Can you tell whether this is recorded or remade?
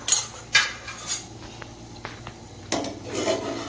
recorded